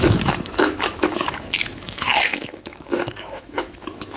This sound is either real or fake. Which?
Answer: fake